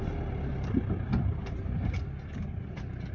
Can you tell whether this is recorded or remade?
recorded